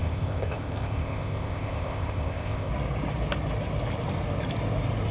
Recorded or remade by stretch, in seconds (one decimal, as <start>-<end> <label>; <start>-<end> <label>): 0.0-2.7 remade; 2.7-5.1 recorded